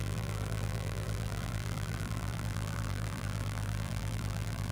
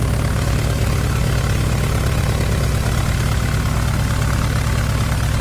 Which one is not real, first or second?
first